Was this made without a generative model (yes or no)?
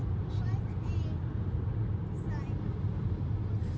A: yes